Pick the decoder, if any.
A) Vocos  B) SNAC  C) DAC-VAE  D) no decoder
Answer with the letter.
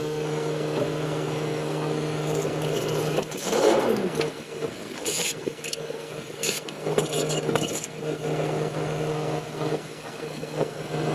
B